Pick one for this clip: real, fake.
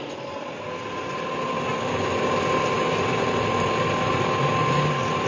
real